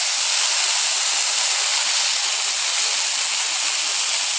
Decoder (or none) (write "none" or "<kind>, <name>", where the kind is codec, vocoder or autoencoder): none